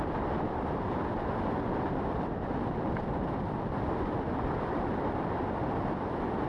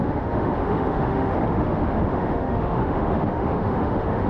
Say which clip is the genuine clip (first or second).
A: first